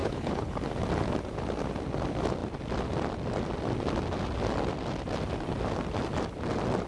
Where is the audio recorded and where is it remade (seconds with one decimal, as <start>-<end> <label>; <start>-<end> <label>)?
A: 0.0-0.6 remade; 0.6-6.9 recorded